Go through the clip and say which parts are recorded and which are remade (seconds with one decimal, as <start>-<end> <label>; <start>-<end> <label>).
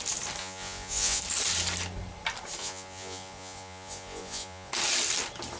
0.0-0.4 recorded; 0.4-1.2 remade; 1.2-2.6 recorded; 2.6-4.7 remade; 4.7-5.6 recorded